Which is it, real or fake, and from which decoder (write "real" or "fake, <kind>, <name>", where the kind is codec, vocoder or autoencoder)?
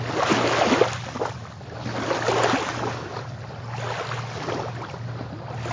real